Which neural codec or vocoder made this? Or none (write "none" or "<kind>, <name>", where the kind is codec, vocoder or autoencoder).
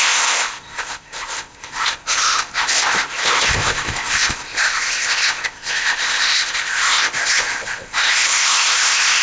codec, ZipCodec